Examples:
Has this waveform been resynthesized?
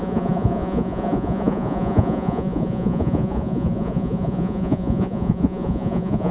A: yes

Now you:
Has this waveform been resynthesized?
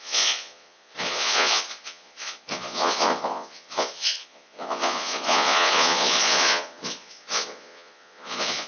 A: yes